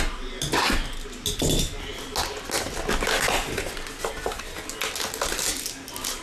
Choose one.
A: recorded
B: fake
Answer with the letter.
A